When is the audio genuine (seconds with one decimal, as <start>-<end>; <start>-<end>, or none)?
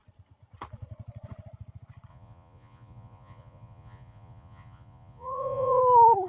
0.0-2.1; 5.8-6.3